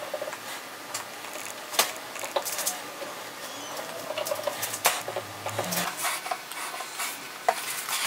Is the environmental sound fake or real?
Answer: real